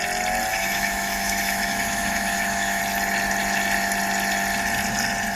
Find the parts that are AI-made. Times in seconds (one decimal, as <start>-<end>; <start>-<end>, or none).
0.5-2.8